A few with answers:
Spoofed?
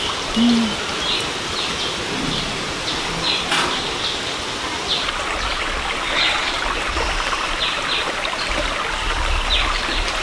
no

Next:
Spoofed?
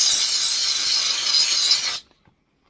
no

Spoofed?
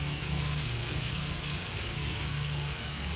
yes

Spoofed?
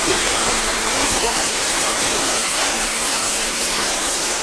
yes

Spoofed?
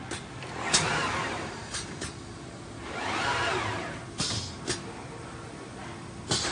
no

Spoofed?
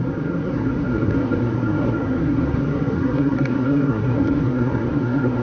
yes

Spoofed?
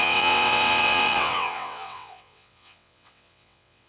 yes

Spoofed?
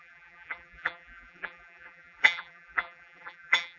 yes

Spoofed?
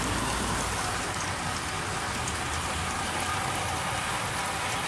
no